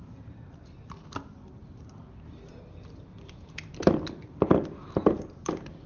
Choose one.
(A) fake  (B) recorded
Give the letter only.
B